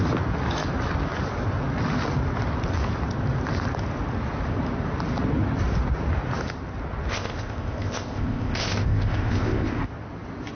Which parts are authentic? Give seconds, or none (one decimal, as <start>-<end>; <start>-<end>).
0.0-7.1; 9.9-10.5